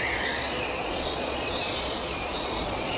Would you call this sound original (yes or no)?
no